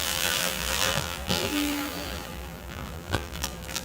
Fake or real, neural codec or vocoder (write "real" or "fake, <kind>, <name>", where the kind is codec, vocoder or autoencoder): fake, vocoder, BigVGAN v2